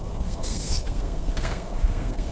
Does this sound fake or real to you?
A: fake